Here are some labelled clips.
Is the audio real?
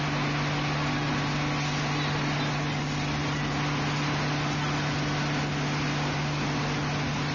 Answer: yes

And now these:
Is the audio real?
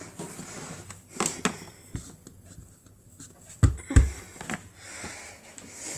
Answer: yes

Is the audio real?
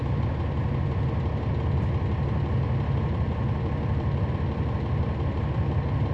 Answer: yes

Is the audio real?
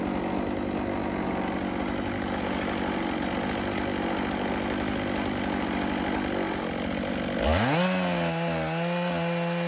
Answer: yes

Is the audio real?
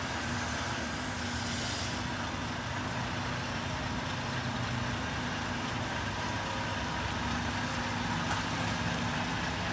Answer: yes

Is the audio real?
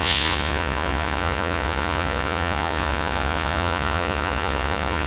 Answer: no